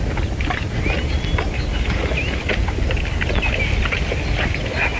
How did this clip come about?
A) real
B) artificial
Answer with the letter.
A